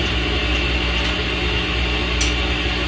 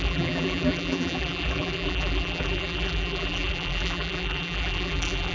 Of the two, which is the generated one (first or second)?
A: second